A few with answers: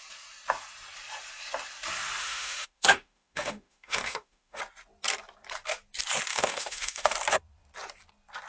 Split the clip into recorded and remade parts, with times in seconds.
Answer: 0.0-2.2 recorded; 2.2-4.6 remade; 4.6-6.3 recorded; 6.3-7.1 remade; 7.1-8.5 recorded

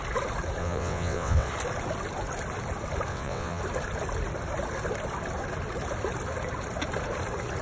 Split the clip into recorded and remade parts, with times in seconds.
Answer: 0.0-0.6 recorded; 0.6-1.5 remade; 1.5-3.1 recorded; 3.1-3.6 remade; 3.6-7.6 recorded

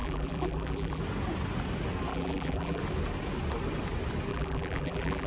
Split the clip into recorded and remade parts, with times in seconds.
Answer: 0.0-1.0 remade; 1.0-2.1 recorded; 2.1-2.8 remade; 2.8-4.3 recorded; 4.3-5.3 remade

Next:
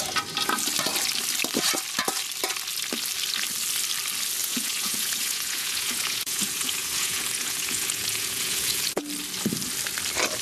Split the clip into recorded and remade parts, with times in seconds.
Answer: 0.0-4.4 recorded; 4.4-9.0 remade; 9.0-10.4 recorded